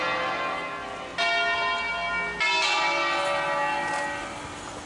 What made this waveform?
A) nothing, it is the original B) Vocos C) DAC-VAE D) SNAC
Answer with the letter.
A